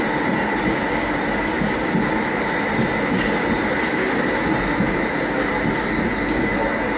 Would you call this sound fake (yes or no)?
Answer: no